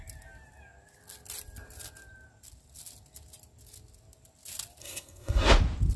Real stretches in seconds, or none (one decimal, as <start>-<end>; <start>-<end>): 0.0-4.8; 5.5-6.0